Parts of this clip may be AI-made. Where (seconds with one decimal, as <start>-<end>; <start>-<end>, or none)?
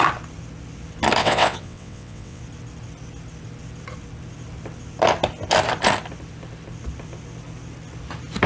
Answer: 1.2-2.4